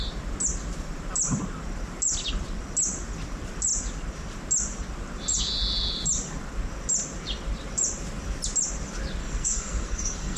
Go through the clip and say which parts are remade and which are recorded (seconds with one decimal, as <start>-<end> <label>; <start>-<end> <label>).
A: 0.0-9.2 recorded; 9.2-10.4 remade